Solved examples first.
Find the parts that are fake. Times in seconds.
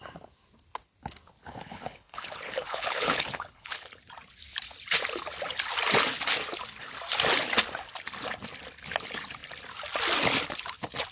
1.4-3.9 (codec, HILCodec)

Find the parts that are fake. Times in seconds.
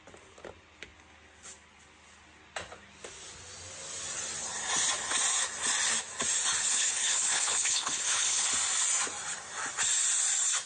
6.7-8.5 (codec, HILCodec)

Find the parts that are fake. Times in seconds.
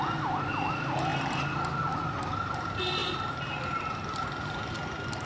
none